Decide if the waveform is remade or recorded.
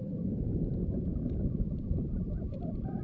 remade